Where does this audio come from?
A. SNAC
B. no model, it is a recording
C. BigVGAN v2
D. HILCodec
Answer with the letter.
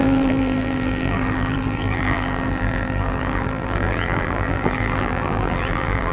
C